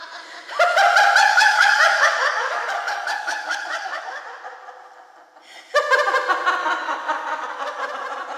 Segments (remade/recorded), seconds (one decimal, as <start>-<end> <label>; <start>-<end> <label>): 0.0-1.2 recorded; 1.2-4.2 remade; 4.2-6.6 recorded; 6.6-7.8 remade; 7.8-8.4 recorded